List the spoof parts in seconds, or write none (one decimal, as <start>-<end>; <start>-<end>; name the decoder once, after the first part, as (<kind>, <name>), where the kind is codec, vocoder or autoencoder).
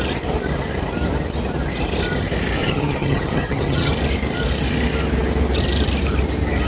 2.6-3.9 (vocoder, HiFi-GAN)